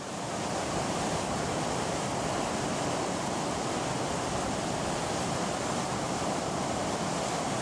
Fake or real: real